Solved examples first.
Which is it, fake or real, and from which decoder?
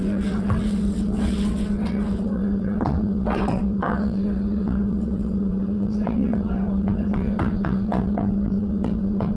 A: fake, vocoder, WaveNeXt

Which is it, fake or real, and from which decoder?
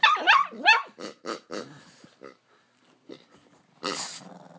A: real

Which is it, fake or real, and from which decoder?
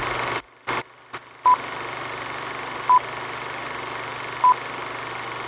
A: real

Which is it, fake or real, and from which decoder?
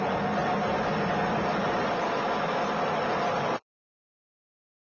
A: real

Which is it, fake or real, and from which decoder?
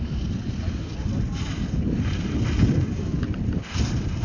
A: real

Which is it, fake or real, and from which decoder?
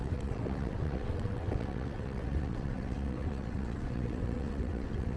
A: fake, vocoder, WaveNeXt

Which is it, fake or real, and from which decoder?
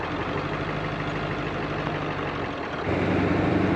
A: real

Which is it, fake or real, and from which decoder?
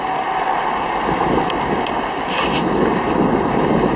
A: real